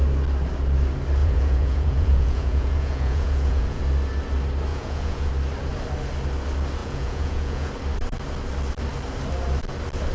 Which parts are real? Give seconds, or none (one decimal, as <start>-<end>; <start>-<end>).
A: 0.0-1.2; 3.8-4.7; 5.3-6.8; 7.7-10.1